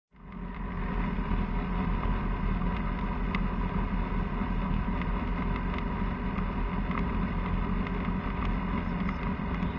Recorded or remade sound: recorded